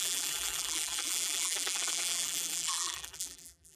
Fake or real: fake